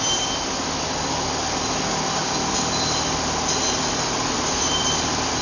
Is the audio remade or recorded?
recorded